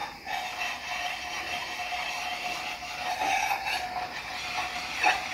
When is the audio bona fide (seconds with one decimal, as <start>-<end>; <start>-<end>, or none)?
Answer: 0.0-5.3